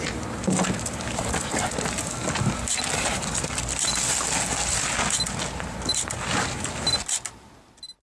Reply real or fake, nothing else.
real